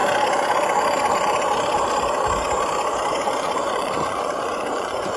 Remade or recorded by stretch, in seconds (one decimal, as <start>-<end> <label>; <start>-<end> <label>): 0.0-3.1 recorded; 3.1-5.2 remade